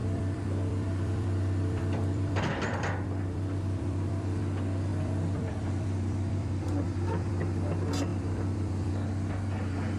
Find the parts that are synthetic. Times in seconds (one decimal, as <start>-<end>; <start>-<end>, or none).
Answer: 0.0-4.4; 4.9-7.3; 8.1-8.9

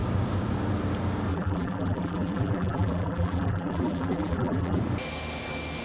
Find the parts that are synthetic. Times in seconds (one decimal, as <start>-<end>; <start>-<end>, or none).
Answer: 1.3-4.8